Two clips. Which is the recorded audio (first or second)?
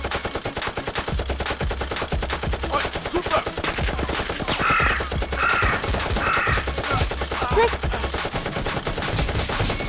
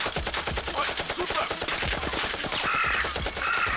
first